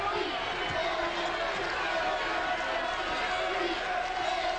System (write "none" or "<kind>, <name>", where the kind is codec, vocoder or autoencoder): none